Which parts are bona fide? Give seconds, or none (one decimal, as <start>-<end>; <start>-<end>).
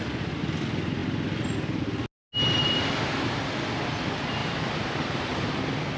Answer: 0.0-4.4; 5.5-6.0